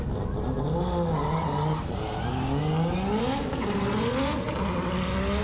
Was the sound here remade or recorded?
recorded